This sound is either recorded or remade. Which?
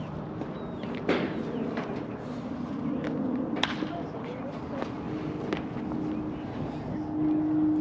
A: recorded